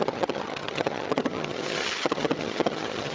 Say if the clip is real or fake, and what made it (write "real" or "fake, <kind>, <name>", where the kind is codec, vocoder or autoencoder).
fake, vocoder, HiFi-GAN